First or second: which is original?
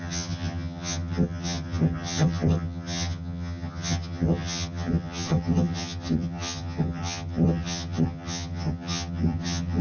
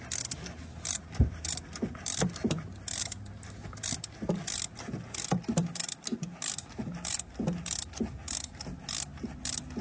second